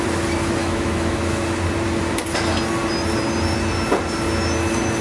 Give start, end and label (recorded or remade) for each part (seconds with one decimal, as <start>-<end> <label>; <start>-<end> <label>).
0.0-0.6 recorded; 0.6-1.4 remade; 1.4-5.0 recorded